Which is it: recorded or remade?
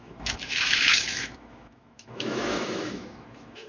remade